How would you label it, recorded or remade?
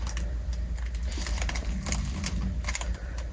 recorded